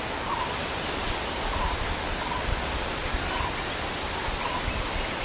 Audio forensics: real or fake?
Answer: real